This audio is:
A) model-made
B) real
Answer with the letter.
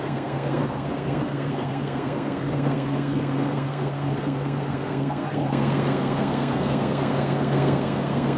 A